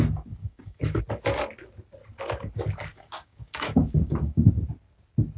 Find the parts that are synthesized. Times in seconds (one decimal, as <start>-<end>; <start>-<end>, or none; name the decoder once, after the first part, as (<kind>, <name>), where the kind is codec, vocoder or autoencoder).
0.4-1.0 (codec, DAC); 2.9-4.5